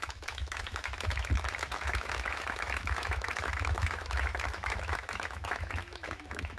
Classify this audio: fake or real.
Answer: fake